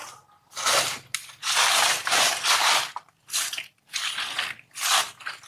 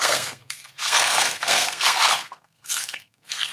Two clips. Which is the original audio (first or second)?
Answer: first